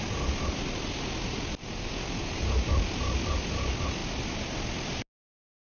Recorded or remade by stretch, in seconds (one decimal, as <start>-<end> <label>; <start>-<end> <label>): 0.0-5.6 recorded

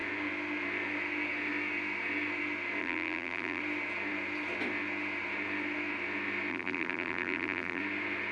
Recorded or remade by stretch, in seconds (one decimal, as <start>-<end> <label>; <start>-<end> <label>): 0.0-2.8 recorded; 2.8-3.6 remade; 3.6-6.5 recorded; 6.5-7.8 remade; 7.8-8.3 recorded